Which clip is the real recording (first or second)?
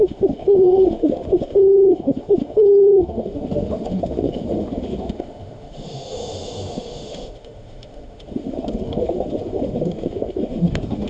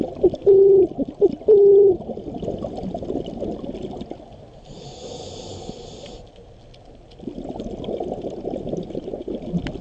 second